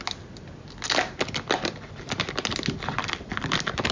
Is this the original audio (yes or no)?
yes